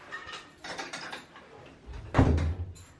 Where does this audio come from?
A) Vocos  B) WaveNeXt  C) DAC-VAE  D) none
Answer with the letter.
D